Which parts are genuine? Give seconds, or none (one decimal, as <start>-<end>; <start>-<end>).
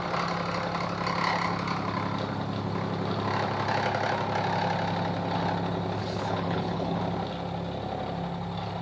0.0-6.0; 7.0-8.8